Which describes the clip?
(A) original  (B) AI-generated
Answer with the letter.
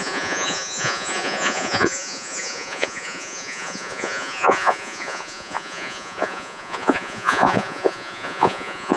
B